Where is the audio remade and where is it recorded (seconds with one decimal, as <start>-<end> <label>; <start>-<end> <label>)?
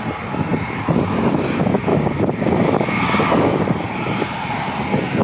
0.0-1.9 recorded; 1.9-3.6 remade; 3.6-5.2 recorded